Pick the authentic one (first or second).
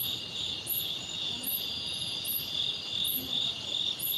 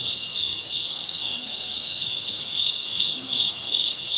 first